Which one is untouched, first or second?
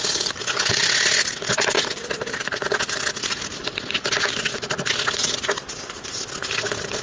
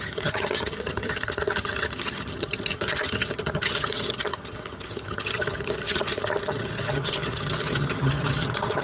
first